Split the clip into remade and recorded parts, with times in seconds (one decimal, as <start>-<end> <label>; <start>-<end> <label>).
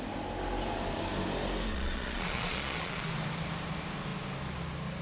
0.0-1.7 recorded; 1.7-3.1 remade; 3.1-5.0 recorded